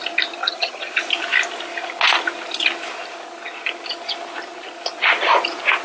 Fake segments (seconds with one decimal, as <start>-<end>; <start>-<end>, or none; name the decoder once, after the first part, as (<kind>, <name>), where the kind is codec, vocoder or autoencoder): 0.4-0.9 (vocoder, HiFi-GAN)